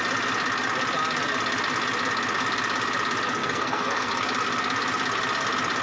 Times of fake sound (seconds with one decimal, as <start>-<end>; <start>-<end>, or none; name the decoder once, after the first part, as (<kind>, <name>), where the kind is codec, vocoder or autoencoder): 3.4-4.1 (codec, SNAC)